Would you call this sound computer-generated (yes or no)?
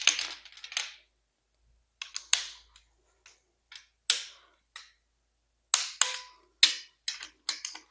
no